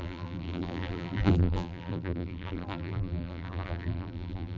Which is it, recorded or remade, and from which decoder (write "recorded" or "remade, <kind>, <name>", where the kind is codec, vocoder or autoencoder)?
remade, vocoder, BigVGAN v2